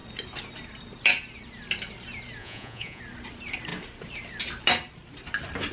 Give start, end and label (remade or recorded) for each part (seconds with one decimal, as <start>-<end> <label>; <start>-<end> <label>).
0.0-2.4 recorded; 2.4-3.0 remade; 3.0-5.7 recorded